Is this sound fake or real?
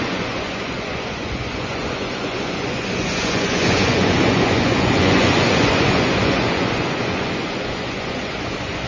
fake